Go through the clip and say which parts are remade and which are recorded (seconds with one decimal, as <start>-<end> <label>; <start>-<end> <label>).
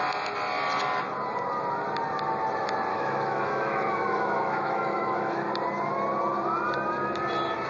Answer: 0.0-2.9 recorded; 2.9-5.5 remade; 5.5-7.7 recorded